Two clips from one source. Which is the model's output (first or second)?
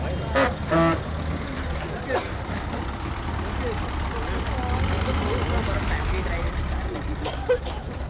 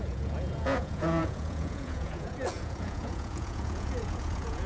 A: second